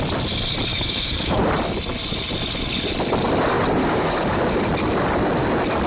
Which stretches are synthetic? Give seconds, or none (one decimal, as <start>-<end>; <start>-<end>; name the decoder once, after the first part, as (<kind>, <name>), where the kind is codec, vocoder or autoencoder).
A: 0.7-1.5 (codec, DAC); 3.8-4.4